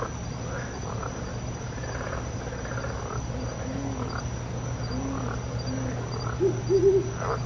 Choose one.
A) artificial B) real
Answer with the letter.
B